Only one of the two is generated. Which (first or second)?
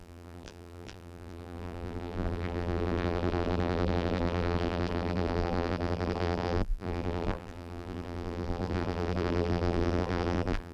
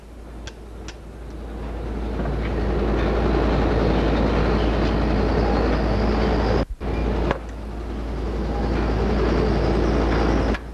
first